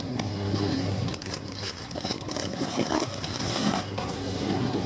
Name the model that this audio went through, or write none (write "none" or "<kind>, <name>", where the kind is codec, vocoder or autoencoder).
codec, SNAC